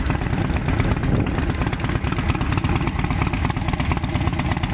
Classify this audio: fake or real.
real